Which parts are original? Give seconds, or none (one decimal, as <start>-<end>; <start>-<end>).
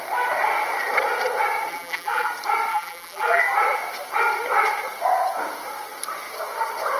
0.0-1.7; 2.3-2.7; 3.4-7.0